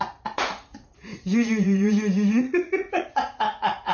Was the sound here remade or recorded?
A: remade